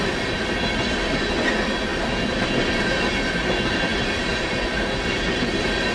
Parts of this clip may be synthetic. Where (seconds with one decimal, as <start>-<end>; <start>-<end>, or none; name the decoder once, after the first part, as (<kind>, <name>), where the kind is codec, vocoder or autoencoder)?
none